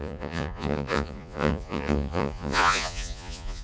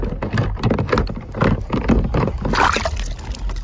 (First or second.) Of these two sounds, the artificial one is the first